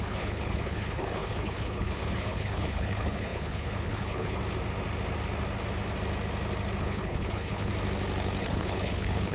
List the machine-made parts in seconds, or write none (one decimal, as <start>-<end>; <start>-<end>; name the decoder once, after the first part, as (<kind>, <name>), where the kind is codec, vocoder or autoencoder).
0.0-4.4 (codec, HILCodec); 6.8-7.7; 8.4-9.3